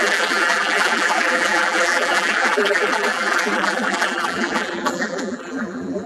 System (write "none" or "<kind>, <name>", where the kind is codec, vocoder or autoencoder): vocoder, BigVGAN v2